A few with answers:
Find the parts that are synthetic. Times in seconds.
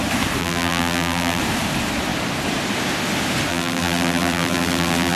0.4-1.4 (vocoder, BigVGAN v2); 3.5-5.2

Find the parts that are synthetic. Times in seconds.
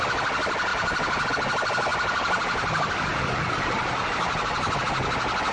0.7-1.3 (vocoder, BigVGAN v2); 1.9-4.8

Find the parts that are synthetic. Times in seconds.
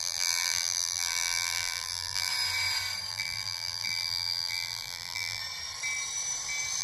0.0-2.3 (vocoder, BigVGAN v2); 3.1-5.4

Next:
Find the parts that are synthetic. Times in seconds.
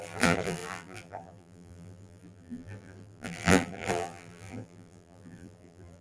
0.0-6.0 (vocoder, BigVGAN v2)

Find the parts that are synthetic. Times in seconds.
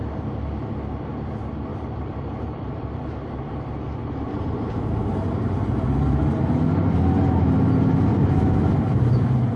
1.7-6.5 (vocoder, BigVGAN v2); 8.1-9.6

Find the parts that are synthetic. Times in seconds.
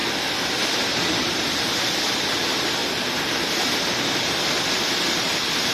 0.6-2.8 (vocoder, BigVGAN v2); 3.6-5.7